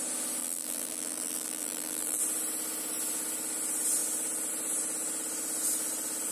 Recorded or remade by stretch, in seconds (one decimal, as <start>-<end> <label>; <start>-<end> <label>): 0.0-0.4 recorded; 0.4-2.2 remade; 2.2-6.3 recorded

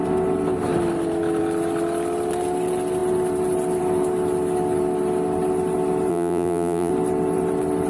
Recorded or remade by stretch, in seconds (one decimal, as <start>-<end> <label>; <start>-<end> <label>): 0.0-6.1 recorded; 6.1-6.9 remade; 6.9-7.9 recorded

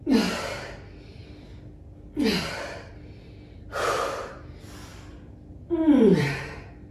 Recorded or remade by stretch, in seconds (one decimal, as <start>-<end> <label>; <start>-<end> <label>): 0.0-6.9 recorded

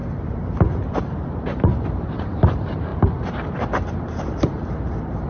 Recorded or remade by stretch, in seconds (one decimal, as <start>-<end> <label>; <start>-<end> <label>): 0.0-0.9 recorded; 0.9-5.3 remade

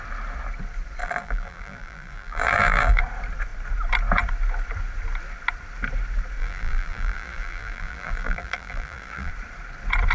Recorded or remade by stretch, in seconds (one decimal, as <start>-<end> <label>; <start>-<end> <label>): 0.0-1.0 recorded; 1.0-3.0 remade; 3.0-6.4 recorded; 6.4-9.3 remade; 9.3-10.1 recorded